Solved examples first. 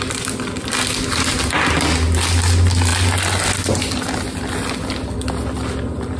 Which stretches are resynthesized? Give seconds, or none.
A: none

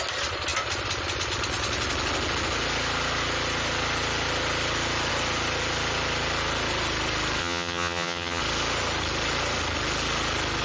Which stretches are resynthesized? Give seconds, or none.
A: 7.4-8.4 (vocoder, HiFi-GAN)

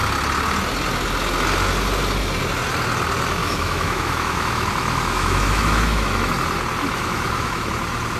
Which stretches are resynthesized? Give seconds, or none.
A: 3.4-6.3 (autoencoder, DAC-VAE); 6.8-7.7

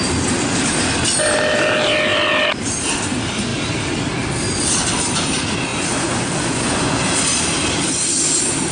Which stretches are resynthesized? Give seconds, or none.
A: 5.7-7.0 (vocoder, Vocos)

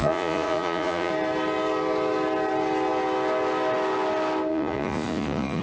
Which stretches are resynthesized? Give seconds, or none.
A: 0.0-1.1 (vocoder, Vocos); 4.5-5.6

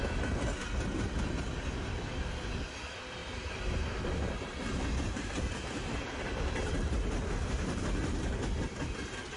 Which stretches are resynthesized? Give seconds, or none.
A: 3.2-7.8 (vocoder, BigVGAN v2)